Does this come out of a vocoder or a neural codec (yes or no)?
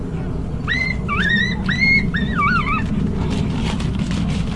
no